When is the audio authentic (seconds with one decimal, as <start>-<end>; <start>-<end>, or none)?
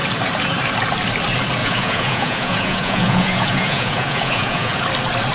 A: 0.0-1.6; 4.8-5.3